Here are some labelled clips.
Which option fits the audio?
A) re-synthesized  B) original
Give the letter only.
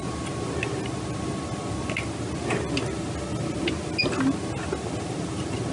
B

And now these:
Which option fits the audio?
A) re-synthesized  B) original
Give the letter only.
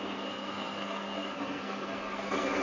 A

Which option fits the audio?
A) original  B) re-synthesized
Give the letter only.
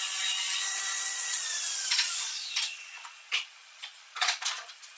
B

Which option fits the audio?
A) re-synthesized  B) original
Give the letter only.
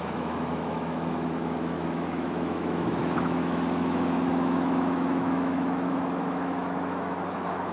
A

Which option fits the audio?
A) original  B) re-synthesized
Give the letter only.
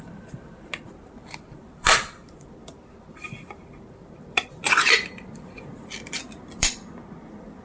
B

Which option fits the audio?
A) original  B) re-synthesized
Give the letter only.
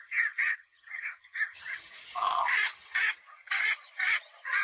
B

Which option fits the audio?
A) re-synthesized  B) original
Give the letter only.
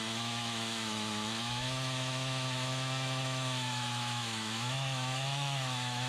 A